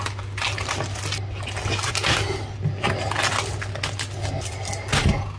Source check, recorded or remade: recorded